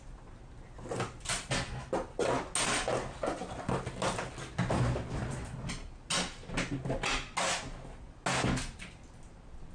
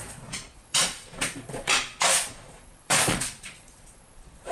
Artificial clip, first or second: second